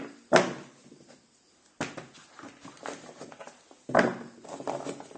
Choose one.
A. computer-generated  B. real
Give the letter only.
B